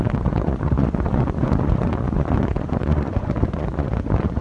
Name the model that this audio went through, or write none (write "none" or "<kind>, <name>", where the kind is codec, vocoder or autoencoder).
vocoder, Vocos